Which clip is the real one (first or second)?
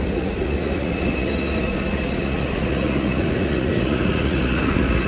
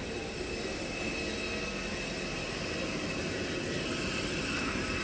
second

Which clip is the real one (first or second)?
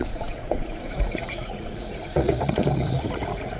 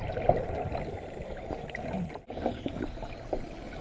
second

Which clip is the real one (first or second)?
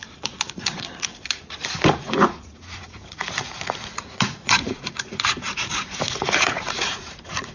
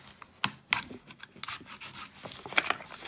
second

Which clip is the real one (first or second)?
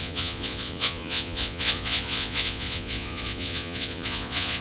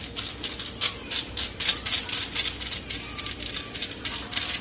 second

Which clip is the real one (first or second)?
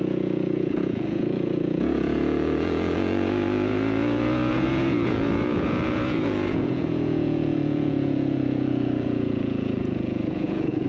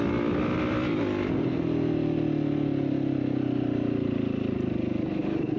second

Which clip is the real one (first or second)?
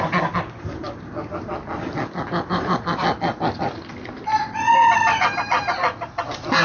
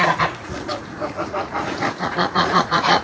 first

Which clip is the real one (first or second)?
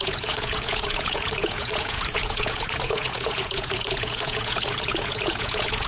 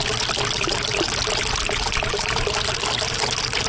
second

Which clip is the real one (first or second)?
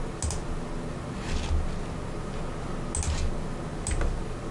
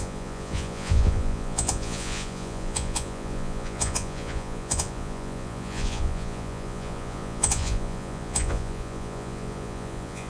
first